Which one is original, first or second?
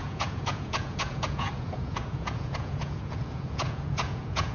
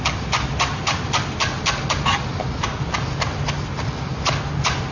second